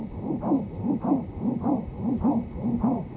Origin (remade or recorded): recorded